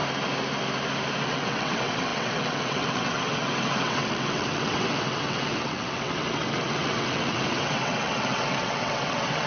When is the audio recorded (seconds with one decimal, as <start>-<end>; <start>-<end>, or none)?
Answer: 0.0-1.2